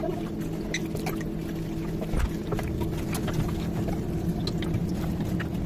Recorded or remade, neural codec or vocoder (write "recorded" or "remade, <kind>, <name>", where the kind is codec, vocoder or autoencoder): recorded